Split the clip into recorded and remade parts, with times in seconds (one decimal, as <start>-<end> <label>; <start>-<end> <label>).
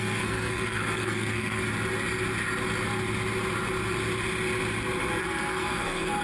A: 0.0-1.6 remade; 1.6-5.2 recorded; 5.2-6.2 remade